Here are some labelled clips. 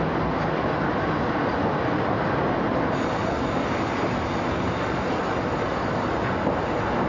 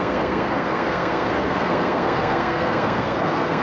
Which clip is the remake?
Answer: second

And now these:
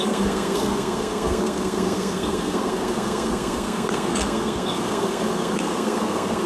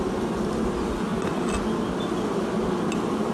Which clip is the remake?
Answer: first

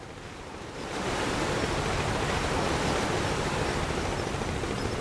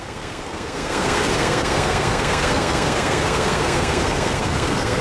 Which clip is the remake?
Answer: second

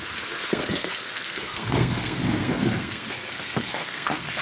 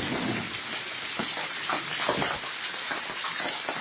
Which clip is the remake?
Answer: first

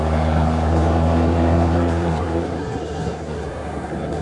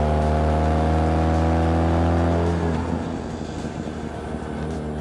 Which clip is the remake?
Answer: first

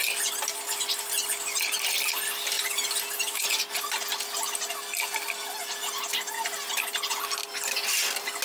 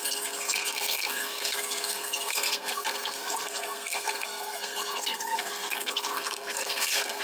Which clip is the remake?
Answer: second